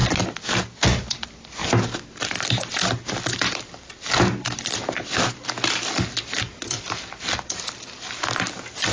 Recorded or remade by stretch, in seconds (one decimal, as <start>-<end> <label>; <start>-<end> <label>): 0.0-8.9 recorded